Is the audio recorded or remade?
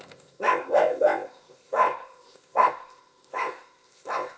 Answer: remade